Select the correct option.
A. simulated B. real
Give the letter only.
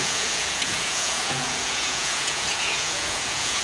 A